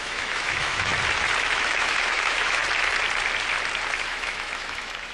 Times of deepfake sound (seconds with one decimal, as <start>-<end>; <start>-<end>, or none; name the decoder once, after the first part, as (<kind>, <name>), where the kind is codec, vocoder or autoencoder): 0.0-0.9 (autoencoder, DAC-VAE); 1.4-2.6; 4.0-5.1